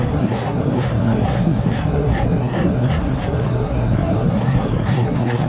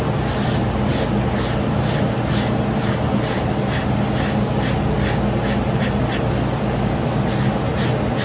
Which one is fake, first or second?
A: first